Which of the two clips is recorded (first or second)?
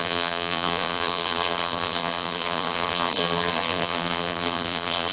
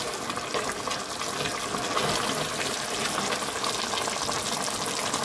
second